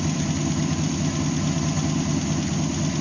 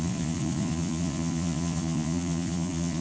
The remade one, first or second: second